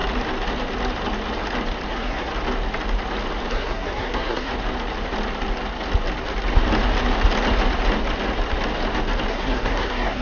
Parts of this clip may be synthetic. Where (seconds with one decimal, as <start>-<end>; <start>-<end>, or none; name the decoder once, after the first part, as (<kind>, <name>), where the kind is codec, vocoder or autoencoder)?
1.9-2.3 (codec, SNAC); 3.5-4.5; 9.3-10.2